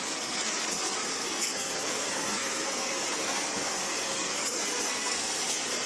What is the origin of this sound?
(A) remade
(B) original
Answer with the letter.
A